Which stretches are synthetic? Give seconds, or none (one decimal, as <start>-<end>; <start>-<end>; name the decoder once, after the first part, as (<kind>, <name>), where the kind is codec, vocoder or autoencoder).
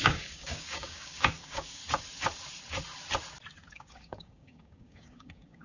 0.0-1.8 (codec, DAC); 3.7-5.6